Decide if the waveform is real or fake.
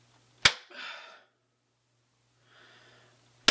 real